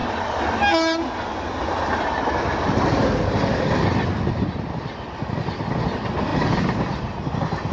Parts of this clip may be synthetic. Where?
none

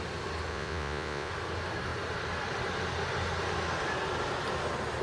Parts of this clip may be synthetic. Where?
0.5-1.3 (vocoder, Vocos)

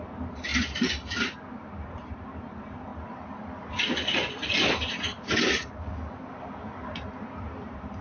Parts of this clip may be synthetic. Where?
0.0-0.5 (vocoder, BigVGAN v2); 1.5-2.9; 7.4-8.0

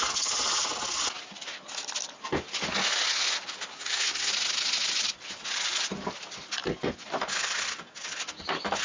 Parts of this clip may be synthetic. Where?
3.7-4.3 (codec, SNAC)

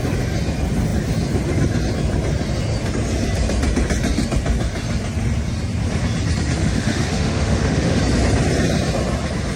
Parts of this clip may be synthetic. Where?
6.6-8.0 (autoencoder, DAC-VAE)